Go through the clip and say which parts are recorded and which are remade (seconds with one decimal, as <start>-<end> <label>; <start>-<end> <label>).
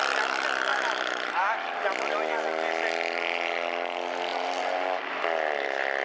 0.0-0.7 recorded; 0.7-1.8 remade; 1.8-4.3 recorded; 4.3-5.1 remade; 5.1-6.0 recorded